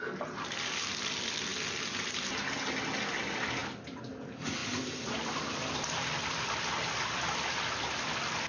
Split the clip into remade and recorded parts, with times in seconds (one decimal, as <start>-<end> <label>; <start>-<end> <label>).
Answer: 0.0-8.5 recorded